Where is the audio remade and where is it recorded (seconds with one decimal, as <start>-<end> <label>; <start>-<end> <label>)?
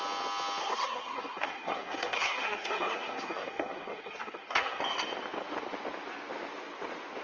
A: 0.0-0.6 recorded; 0.6-4.8 remade; 4.8-7.2 recorded